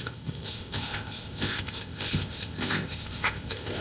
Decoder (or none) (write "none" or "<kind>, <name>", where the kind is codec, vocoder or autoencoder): codec, ZipCodec